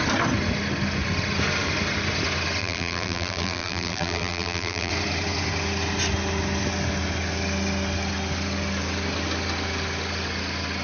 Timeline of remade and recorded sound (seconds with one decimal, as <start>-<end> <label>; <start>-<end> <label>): 0.0-2.6 recorded; 2.6-4.9 remade; 4.9-10.8 recorded